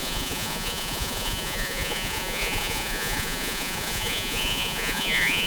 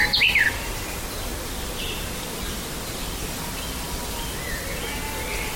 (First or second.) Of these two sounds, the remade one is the first